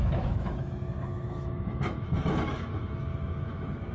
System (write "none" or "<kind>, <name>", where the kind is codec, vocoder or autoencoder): autoencoder, DAC-VAE